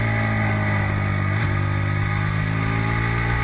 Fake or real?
real